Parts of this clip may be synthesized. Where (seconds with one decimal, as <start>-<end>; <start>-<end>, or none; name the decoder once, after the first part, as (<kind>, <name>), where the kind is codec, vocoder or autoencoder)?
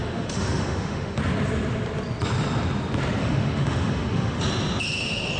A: 0.0-1.2 (autoencoder, DAC-VAE); 3.2-4.4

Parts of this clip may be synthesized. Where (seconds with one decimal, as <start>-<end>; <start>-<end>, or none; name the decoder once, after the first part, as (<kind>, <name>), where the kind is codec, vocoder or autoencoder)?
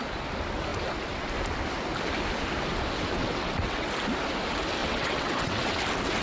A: 3.2-3.9 (vocoder, WaveNeXt); 4.8-5.8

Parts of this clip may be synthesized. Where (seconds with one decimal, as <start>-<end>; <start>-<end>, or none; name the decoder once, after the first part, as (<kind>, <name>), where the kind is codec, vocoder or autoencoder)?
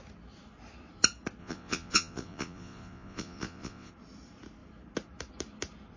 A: 1.4-3.9 (vocoder, Vocos)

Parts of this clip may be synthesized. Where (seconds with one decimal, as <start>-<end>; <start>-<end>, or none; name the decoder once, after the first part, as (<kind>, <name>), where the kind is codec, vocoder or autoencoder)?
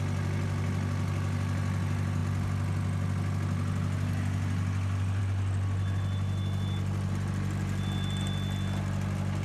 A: none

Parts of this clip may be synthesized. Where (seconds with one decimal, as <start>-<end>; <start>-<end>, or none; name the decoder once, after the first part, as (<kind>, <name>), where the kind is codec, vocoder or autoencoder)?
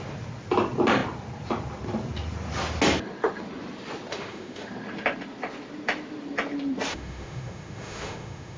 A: 4.1-4.7 (autoencoder, DAC-VAE); 6.9-8.6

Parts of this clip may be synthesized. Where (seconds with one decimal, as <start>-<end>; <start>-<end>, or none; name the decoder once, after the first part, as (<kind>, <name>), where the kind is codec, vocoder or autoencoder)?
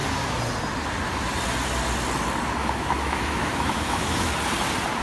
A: 2.6-4.3 (autoencoder, DAC-VAE)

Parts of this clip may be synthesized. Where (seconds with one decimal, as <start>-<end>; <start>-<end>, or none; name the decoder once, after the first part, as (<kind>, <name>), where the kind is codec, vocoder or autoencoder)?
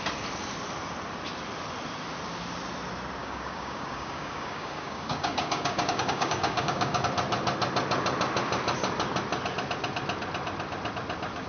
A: 3.2-7.0 (codec, DAC)